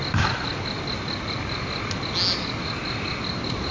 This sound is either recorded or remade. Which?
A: recorded